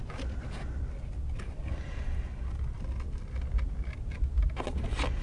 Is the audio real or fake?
real